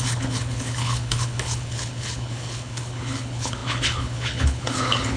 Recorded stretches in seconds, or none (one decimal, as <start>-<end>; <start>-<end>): none